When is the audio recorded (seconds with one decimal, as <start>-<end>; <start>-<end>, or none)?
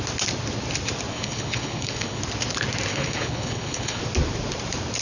0.0-1.1; 2.2-2.9; 4.0-5.0